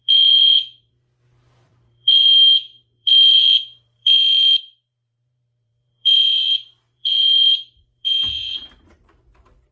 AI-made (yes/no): yes